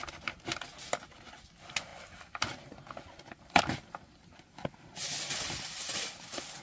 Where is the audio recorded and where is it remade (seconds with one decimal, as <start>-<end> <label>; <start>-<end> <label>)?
0.0-6.6 recorded